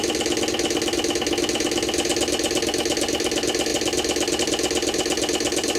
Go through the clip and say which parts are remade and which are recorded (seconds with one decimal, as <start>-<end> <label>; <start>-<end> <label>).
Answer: 0.0-5.8 recorded